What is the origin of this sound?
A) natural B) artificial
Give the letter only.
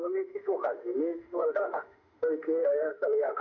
B